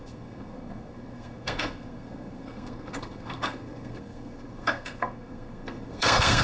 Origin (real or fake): fake